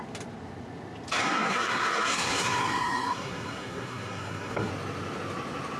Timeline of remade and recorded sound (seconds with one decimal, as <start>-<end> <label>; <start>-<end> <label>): 0.0-1.2 recorded; 1.2-4.7 remade; 4.7-5.8 recorded